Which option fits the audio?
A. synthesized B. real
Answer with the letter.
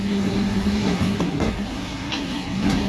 A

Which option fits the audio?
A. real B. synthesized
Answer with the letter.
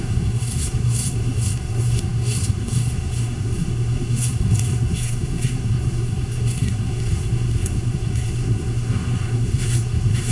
B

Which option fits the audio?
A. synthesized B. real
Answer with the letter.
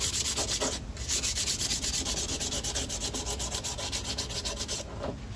B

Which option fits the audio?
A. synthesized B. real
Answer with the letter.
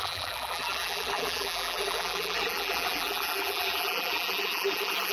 A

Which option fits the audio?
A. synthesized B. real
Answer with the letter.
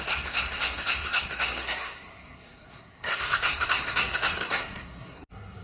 A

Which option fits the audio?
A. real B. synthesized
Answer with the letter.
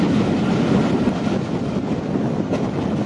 A